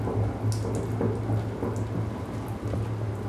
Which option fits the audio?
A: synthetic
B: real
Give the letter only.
B